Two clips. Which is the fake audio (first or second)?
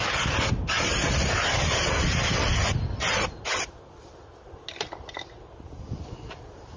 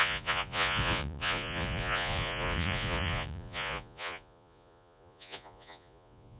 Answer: second